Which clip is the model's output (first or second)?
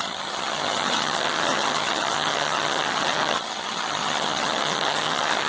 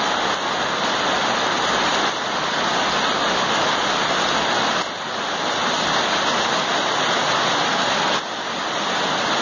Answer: first